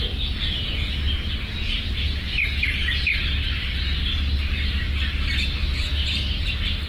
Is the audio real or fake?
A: real